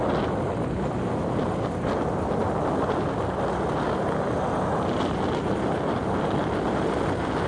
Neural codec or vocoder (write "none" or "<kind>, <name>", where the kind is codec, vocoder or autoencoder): none